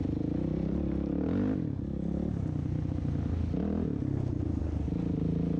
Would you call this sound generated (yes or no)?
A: no